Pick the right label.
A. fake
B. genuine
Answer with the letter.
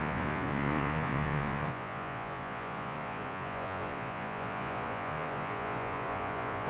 A